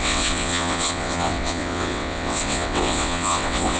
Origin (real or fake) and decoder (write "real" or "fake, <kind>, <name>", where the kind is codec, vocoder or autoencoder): fake, vocoder, WaveNeXt